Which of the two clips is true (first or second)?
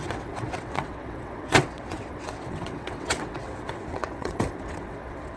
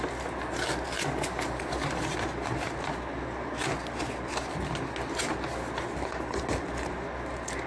second